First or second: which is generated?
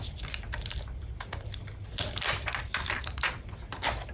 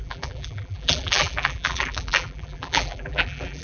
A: second